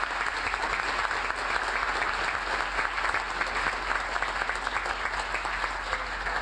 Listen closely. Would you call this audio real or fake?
real